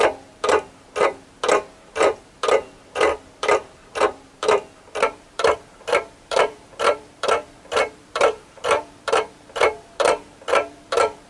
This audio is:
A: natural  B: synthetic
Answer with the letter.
B